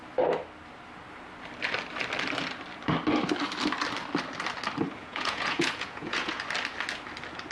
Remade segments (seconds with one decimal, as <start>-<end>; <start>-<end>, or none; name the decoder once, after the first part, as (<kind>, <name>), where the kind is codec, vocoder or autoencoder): 5.0-6.4 (vocoder, Vocos)